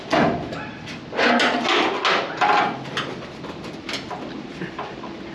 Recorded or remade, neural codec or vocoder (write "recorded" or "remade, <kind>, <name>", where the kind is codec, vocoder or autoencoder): recorded